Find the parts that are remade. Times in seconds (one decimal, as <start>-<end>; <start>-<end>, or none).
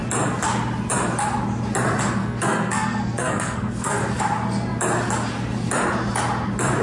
2.2-4.2